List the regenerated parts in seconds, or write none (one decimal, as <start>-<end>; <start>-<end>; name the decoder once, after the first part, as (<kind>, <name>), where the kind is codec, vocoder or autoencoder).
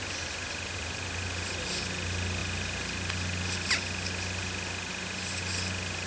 none